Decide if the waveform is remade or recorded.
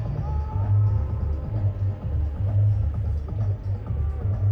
recorded